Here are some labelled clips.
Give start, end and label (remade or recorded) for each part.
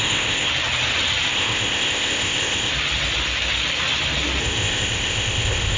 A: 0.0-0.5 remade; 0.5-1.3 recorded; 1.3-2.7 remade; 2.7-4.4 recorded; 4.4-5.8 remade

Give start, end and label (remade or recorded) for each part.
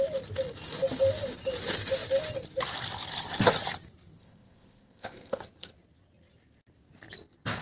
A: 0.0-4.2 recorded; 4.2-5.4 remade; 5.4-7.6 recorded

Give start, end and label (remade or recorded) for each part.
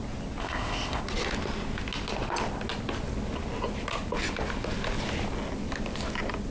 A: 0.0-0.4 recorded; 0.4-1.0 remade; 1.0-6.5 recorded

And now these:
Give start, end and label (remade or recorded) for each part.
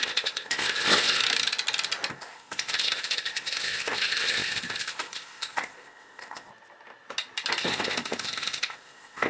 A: 0.0-1.2 remade; 1.2-2.1 recorded; 2.1-6.5 remade; 6.5-7.6 recorded; 7.6-9.3 remade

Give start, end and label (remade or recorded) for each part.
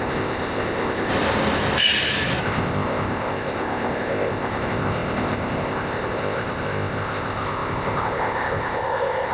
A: 0.0-1.1 remade; 1.1-2.4 recorded; 2.4-9.3 remade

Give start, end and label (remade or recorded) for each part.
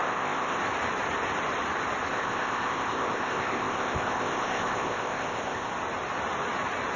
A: 0.0-0.6 remade; 0.6-2.1 recorded; 2.1-5.7 remade; 5.7-7.0 recorded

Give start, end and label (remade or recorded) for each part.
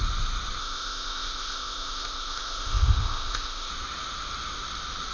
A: 0.0-0.6 recorded; 0.6-3.7 remade; 3.7-5.1 recorded